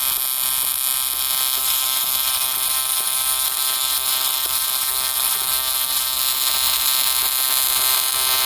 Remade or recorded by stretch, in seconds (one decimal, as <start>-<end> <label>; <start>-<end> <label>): 0.0-1.6 recorded; 1.6-6.2 remade; 6.2-8.5 recorded